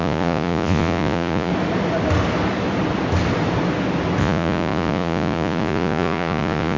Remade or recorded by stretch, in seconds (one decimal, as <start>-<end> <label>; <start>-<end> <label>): 0.0-1.5 remade; 1.5-4.2 recorded; 4.2-6.8 remade